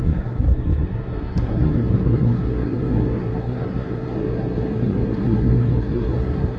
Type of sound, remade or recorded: remade